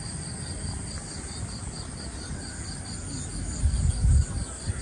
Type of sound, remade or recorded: recorded